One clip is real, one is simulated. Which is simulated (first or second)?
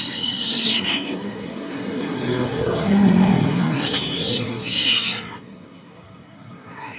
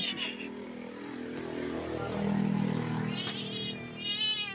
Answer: first